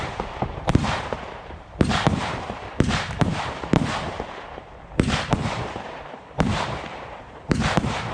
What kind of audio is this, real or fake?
fake